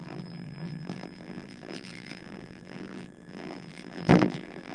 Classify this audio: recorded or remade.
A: remade